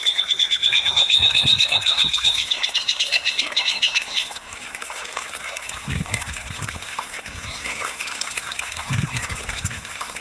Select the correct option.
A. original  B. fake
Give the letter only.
B